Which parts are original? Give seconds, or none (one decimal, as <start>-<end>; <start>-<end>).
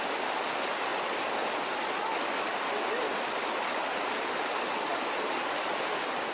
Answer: 0.0-6.3